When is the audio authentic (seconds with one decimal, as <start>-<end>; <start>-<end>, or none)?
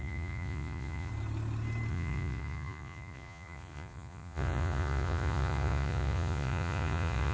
1.1-1.9